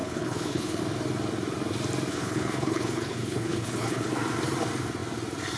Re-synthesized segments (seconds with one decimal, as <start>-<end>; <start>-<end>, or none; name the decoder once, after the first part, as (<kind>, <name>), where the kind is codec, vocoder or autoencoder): 0.0-0.8 (codec, HILCodec); 2.1-4.1